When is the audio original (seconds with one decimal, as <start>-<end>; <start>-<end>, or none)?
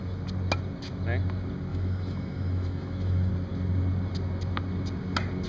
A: 0.0-1.7; 3.3-5.5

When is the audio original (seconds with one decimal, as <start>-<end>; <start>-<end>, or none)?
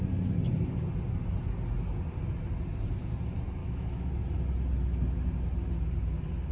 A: 0.0-3.6; 4.1-6.5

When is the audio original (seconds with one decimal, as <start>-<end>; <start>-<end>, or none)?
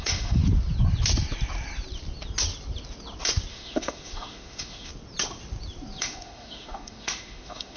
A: 0.4-3.5; 4.9-6.0